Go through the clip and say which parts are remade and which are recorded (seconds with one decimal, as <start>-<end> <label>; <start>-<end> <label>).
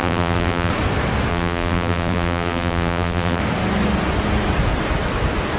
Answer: 0.0-0.7 remade; 0.7-1.3 recorded; 1.3-3.4 remade; 3.4-5.6 recorded